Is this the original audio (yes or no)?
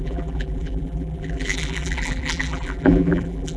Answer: no